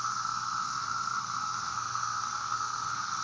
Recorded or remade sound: remade